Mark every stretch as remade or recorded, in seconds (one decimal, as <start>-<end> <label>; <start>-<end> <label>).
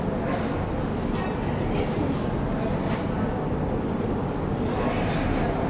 0.0-5.7 recorded